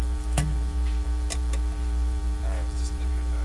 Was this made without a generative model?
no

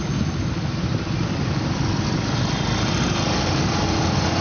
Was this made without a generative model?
yes